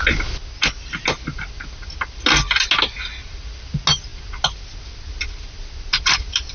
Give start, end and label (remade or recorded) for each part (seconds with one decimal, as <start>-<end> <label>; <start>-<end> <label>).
0.0-6.5 recorded